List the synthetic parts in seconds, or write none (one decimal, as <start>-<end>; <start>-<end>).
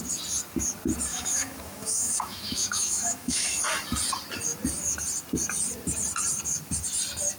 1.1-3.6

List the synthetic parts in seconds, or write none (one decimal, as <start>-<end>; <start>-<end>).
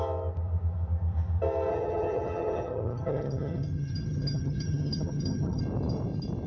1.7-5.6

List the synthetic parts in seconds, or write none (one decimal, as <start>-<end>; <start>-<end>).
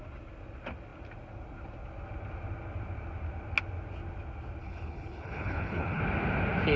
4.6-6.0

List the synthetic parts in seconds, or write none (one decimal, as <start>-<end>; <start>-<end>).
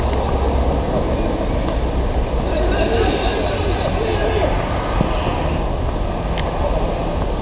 none